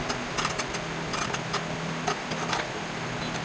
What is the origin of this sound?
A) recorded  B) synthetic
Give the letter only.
A